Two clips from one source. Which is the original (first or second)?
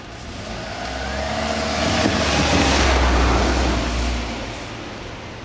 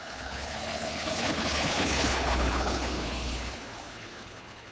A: first